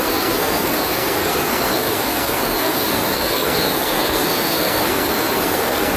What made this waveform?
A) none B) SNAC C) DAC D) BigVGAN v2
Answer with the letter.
B